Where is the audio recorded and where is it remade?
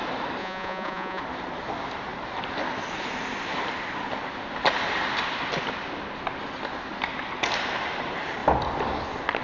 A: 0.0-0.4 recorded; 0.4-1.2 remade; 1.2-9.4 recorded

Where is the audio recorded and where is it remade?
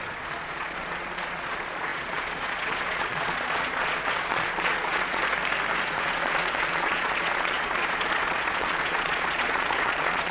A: 0.0-5.2 remade; 5.2-5.8 recorded; 5.8-10.3 remade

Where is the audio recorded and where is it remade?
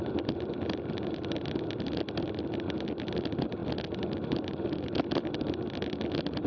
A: 0.0-6.5 recorded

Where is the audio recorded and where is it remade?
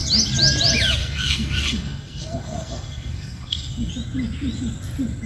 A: 0.0-1.0 recorded; 1.0-3.9 remade; 3.9-5.3 recorded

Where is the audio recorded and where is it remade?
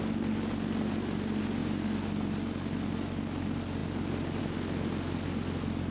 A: 0.0-5.9 recorded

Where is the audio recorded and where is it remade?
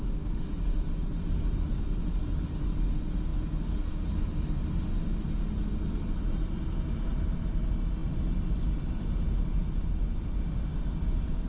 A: 0.0-11.5 recorded